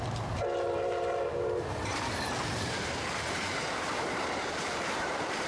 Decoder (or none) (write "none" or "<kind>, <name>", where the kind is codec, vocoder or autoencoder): vocoder, BigVGAN v2